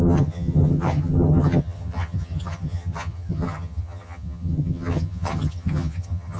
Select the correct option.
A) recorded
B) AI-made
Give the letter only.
B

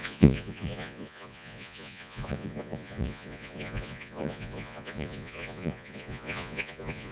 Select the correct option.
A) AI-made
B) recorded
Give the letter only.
A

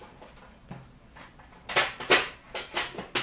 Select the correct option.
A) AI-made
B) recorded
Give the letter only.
B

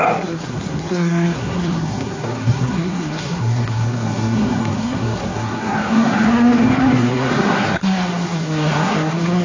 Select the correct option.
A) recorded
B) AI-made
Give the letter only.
B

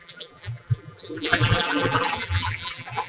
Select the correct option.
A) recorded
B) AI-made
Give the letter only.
B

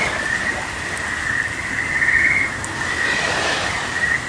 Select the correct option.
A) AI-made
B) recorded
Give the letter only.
B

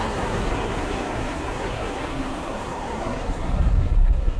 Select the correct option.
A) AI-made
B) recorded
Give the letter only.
A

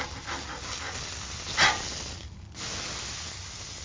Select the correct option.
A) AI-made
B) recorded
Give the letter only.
B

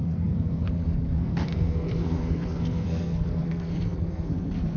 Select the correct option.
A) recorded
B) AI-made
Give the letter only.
B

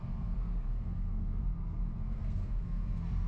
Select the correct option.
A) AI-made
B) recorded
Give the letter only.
A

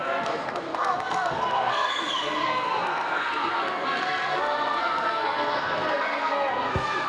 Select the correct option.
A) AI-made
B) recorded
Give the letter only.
A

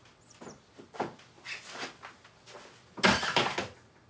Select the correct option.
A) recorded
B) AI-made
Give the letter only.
A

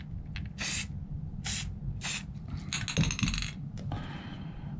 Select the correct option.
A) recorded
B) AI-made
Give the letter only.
A